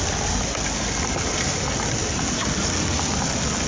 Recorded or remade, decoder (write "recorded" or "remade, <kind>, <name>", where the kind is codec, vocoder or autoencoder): recorded